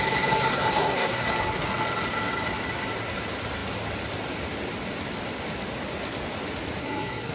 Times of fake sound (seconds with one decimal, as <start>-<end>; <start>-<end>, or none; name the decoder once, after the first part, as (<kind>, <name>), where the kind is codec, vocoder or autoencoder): 0.5-1.3 (codec, SNAC); 6.8-7.3